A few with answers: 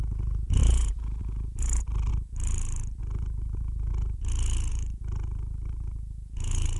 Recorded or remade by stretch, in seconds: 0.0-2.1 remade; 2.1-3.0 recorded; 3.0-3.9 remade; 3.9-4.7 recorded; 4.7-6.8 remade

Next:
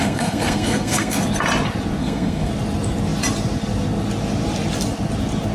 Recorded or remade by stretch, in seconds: 0.0-1.2 remade; 1.2-2.0 recorded; 2.0-2.5 remade; 2.5-5.5 recorded

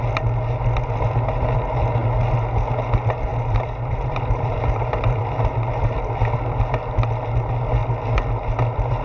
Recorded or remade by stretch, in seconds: 0.0-3.3 recorded; 3.3-5.2 remade; 5.2-9.0 recorded

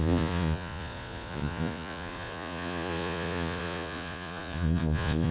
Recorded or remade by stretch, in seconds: 0.0-5.3 remade

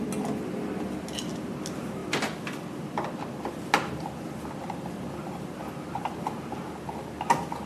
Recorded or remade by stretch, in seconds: 0.0-7.7 recorded